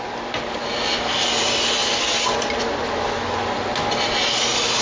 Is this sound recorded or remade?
recorded